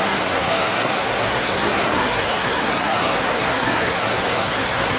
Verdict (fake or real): fake